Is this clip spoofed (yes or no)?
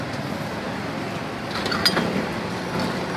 no